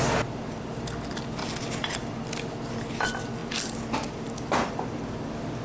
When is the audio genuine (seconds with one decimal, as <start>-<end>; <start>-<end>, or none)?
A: 0.0-5.6